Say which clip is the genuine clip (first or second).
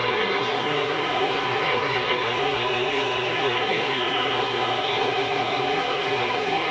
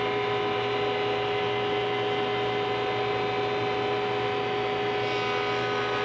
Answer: second